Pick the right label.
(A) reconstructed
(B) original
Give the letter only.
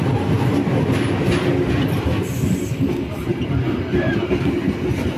B